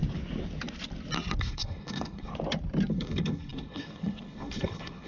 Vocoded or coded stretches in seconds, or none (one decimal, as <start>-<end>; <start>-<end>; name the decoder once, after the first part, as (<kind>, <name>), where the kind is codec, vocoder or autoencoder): 1.4-2.3 (codec, HILCodec); 2.9-5.1